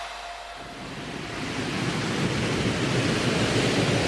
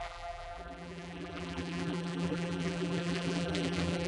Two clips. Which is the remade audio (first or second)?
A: second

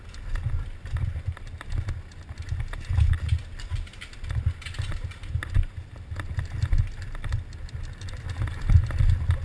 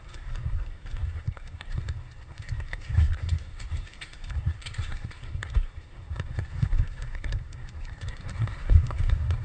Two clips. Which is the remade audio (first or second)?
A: second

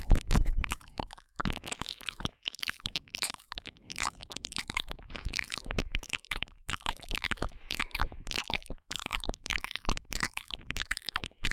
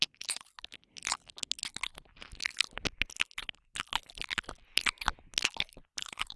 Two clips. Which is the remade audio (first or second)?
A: first